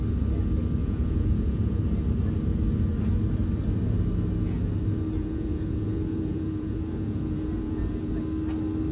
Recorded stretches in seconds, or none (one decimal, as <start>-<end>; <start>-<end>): 0.0-0.8; 1.8-5.2; 8.1-8.9

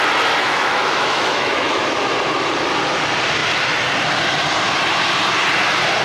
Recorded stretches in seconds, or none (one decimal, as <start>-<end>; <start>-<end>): 0.0-0.4; 1.8-6.0

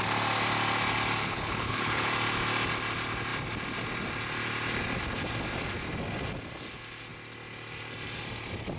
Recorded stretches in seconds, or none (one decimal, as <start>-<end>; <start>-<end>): 0.0-1.2; 2.1-8.8

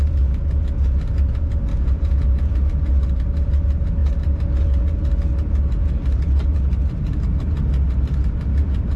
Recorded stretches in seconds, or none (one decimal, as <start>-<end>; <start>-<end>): 0.0-1.7; 2.6-9.0

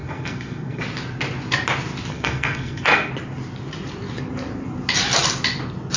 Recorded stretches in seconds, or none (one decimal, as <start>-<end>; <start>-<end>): 0.8-2.1; 3.1-6.0

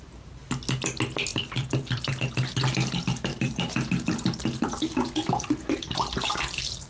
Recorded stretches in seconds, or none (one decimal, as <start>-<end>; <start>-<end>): 0.0-1.3; 2.1-3.3